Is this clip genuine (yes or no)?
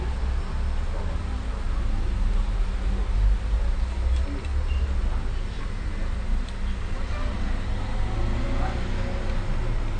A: yes